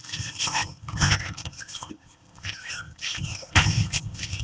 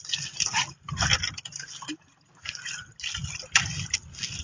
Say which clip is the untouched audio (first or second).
second